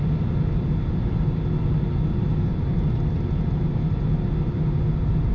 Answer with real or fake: real